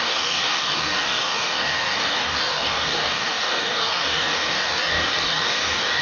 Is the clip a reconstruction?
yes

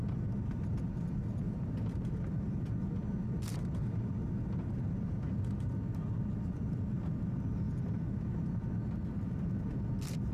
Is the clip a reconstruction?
no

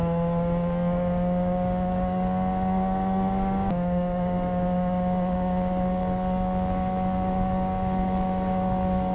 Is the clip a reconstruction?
yes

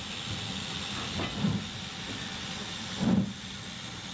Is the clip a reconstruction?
no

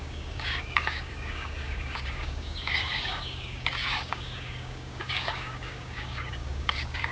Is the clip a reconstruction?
yes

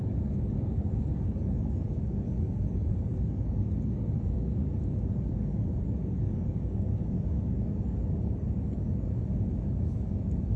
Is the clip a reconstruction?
yes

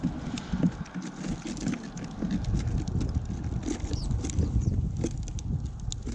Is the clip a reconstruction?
no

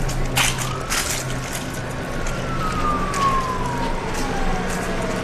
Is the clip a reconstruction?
no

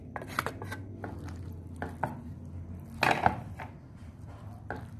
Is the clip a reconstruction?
no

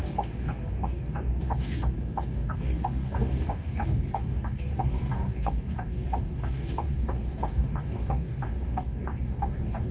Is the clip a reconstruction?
yes